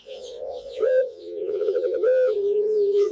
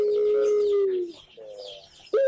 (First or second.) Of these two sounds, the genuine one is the second